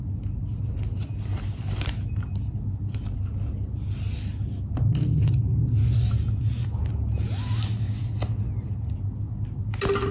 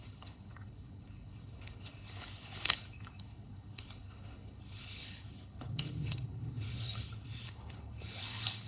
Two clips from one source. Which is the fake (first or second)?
second